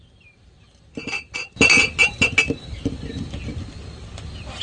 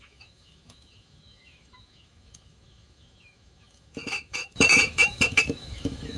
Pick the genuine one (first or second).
first